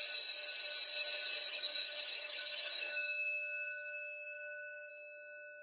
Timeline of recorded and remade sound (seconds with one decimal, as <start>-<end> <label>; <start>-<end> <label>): 0.0-1.5 recorded; 1.5-4.9 remade; 4.9-5.6 recorded